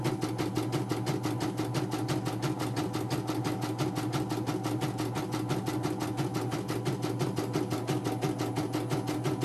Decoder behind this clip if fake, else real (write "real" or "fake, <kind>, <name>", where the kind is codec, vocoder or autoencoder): real